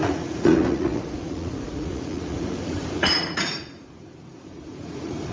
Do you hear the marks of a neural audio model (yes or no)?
yes